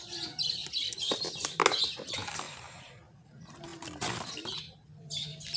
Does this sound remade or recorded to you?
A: recorded